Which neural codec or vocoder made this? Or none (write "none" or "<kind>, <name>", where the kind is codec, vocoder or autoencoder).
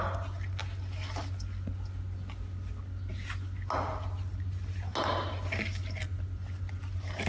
none